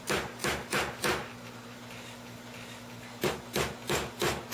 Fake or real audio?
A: real